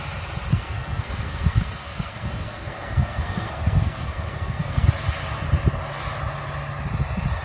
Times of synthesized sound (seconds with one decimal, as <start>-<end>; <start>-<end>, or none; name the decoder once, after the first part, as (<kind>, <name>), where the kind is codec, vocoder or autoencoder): 0.5-4.9 (codec, SNAC)